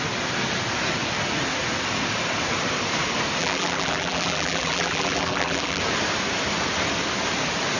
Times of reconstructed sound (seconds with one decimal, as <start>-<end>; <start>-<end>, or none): 3.4-5.8